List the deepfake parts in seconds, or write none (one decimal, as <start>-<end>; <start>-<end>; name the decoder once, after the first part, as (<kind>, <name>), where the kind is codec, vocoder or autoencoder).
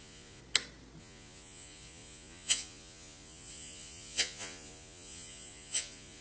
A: 0.0-0.4 (vocoder, Vocos); 1.0-6.2